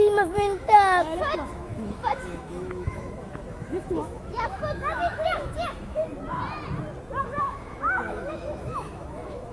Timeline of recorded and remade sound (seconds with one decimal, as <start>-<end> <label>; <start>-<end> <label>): 0.0-6.1 remade; 6.1-7.2 recorded; 7.2-9.5 remade